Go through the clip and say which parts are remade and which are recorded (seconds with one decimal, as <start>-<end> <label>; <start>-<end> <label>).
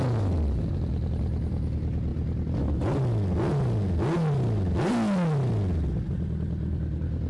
0.0-7.3 recorded